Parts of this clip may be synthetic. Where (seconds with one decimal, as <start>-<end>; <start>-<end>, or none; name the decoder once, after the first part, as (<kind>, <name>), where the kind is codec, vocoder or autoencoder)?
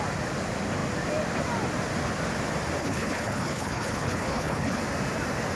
2.8-4.8 (codec, HILCodec)